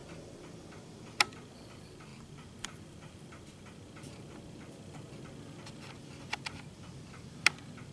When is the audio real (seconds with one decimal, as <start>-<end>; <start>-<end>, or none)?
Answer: 0.0-7.9